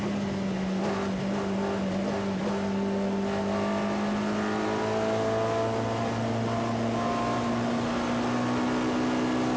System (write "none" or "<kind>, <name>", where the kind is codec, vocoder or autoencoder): none